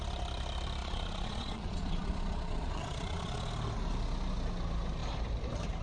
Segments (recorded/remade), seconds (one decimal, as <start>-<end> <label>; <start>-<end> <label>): 0.0-0.8 recorded; 0.8-3.5 remade; 3.5-5.8 recorded